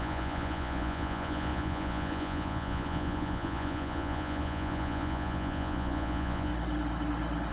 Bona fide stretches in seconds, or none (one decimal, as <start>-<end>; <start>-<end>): 6.5-7.5